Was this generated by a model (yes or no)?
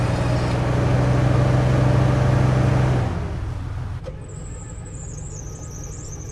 no